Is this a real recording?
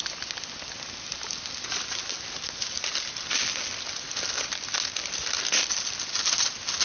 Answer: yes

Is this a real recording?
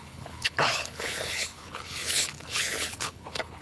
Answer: no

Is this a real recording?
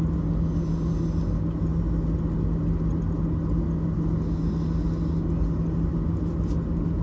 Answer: yes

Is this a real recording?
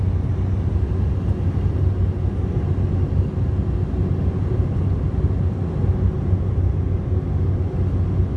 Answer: yes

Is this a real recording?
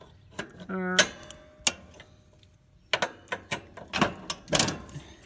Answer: yes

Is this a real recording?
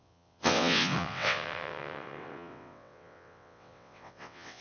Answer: no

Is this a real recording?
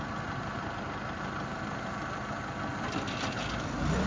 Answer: yes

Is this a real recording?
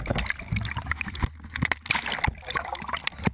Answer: yes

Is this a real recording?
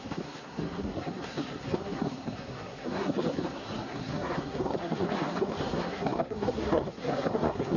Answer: no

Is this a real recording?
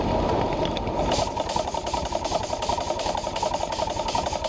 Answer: yes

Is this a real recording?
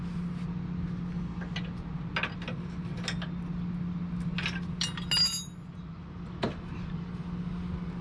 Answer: yes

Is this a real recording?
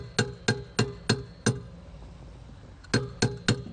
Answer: yes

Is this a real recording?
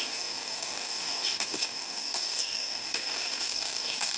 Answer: no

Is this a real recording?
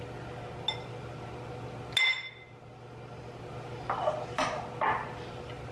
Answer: yes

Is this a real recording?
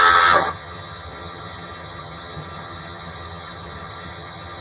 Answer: no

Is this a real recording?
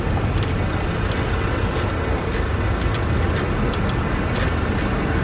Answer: yes